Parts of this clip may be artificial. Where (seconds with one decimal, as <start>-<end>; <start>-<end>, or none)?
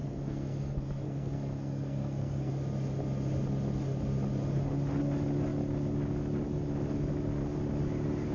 0.0-2.5